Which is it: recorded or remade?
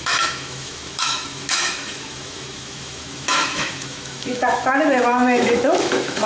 remade